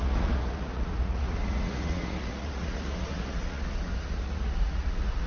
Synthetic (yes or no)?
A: yes